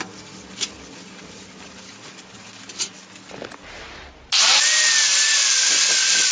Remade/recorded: recorded